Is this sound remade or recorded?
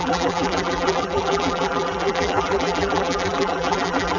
remade